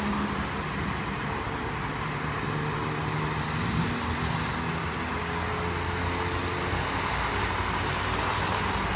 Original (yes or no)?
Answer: yes